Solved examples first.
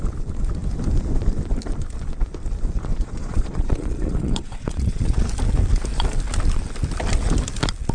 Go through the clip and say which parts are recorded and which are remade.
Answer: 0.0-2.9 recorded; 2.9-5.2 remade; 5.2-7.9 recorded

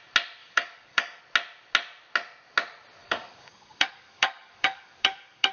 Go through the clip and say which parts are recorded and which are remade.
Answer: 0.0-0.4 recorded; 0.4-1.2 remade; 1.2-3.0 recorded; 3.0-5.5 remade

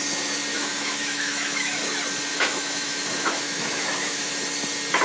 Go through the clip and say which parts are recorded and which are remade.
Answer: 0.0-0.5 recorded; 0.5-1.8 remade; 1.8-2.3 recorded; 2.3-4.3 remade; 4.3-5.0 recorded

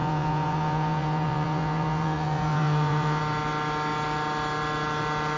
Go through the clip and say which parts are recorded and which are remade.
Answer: 0.0-3.2 remade; 3.2-5.4 recorded

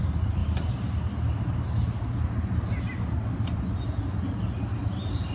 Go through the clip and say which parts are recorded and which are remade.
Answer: 0.0-5.3 recorded

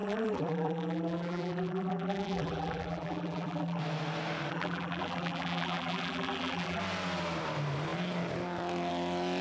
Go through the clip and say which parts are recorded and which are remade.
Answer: 0.0-3.8 remade; 3.8-4.5 recorded; 4.5-6.8 remade; 6.8-9.4 recorded